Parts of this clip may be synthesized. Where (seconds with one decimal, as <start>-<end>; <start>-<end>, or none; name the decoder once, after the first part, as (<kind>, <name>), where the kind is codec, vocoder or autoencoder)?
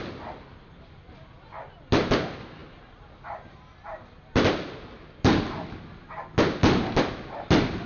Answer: none